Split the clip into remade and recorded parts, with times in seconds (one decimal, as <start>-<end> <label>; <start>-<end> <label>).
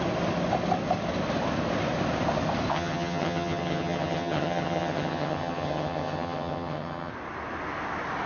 0.0-2.7 recorded; 2.7-7.1 remade; 7.1-8.3 recorded